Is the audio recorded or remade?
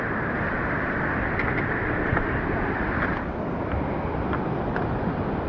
recorded